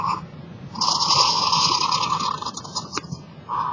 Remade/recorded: recorded